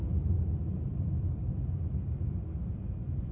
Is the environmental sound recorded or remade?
recorded